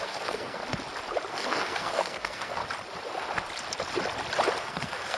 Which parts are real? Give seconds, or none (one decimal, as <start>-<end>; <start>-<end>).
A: 0.6-1.3; 2.6-4.6

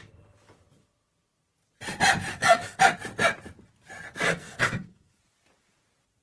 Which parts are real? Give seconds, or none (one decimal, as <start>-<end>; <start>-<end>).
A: 0.0-2.3; 2.8-4.3; 5.2-6.2

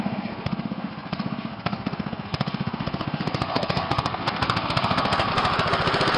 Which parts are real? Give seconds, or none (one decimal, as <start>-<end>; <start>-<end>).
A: 5.3-6.2

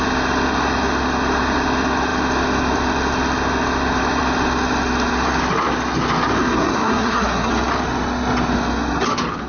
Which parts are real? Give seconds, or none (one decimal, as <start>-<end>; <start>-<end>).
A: 0.0-6.4; 7.5-9.5

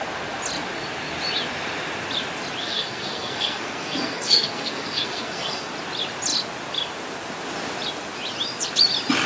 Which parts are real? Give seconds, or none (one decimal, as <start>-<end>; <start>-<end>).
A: 0.0-2.6; 5.7-9.3